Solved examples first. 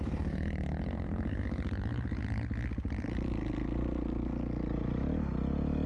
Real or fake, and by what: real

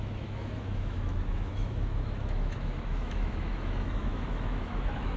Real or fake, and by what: fake, autoencoder, DAC-VAE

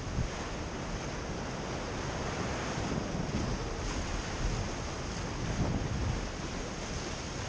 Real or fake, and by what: real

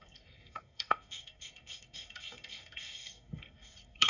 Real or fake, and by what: fake, codec, SNAC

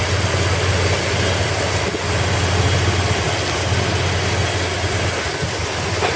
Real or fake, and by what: real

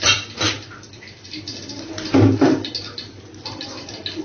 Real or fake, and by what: real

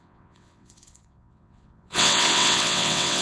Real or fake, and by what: fake, vocoder, WaveNeXt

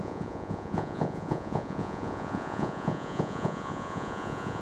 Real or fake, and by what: fake, vocoder, Vocos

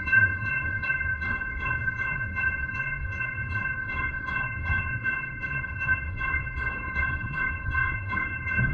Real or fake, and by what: fake, codec, SNAC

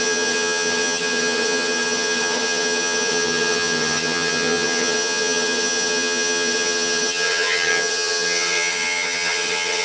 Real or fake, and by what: fake, vocoder, HiFi-GAN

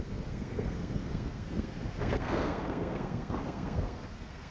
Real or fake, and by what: fake, codec, SNAC